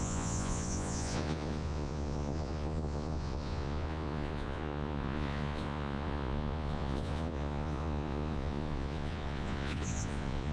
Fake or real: fake